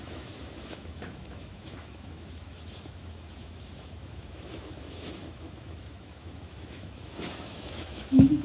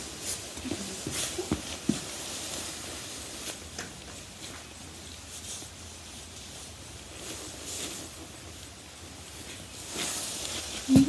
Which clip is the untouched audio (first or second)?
second